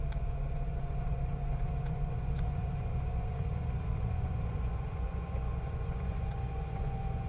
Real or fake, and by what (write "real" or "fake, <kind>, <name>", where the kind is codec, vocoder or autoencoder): fake, vocoder, Vocos